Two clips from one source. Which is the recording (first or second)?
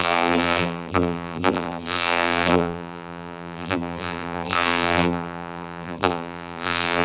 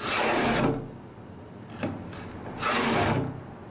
second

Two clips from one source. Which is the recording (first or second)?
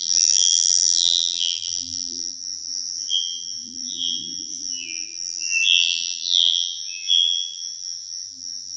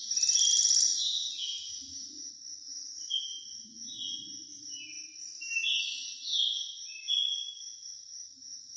second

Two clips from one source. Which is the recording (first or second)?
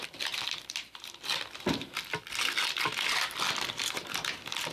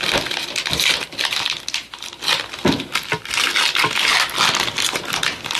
second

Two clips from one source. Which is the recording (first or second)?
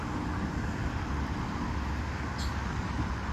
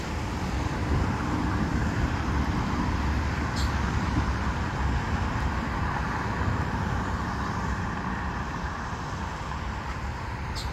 first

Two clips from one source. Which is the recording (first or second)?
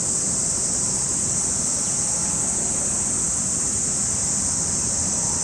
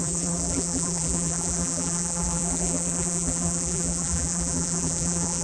first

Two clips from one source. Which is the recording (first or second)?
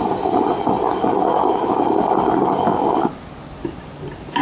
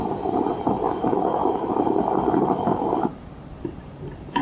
first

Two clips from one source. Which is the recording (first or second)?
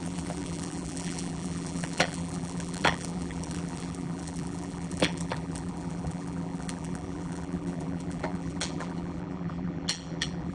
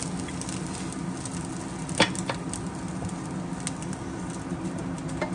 second